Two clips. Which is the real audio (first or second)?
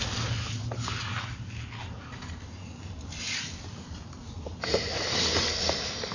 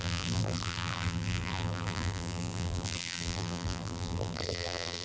first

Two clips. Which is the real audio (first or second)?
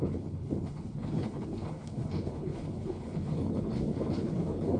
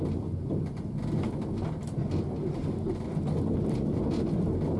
second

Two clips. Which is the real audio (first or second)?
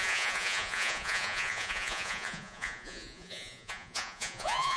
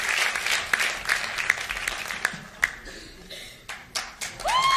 second